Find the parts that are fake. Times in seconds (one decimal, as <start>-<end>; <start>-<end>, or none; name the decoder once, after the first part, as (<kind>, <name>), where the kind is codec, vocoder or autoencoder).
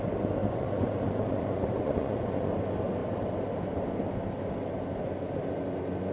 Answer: 0.4-2.5 (vocoder, Vocos)